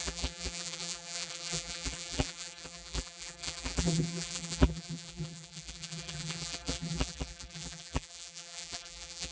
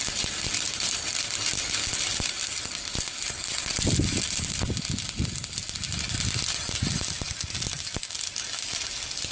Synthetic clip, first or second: first